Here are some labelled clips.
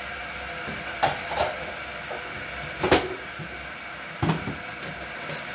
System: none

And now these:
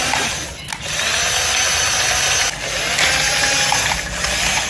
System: none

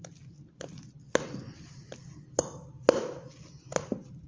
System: none